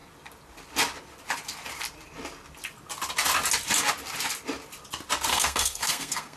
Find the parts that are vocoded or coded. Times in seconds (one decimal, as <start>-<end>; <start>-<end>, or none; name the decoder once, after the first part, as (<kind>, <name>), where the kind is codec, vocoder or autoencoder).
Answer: 5.3-6.4 (codec, SNAC)